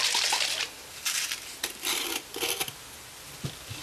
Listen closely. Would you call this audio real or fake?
real